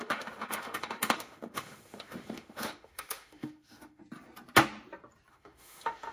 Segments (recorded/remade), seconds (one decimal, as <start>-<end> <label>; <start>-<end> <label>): 0.0-4.0 remade; 4.0-5.3 recorded; 5.3-6.1 remade